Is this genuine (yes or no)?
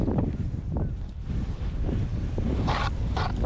yes